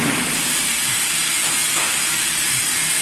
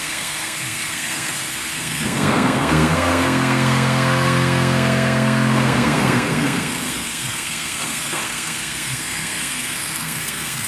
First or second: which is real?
first